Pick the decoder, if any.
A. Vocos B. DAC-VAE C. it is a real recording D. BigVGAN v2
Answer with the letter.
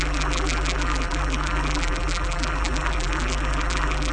D